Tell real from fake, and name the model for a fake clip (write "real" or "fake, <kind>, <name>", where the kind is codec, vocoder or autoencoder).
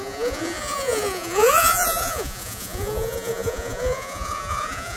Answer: fake, vocoder, Vocos